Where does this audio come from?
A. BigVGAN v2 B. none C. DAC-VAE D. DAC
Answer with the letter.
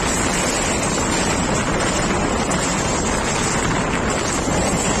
B